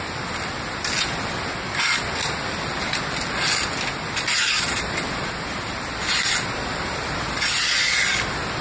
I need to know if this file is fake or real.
real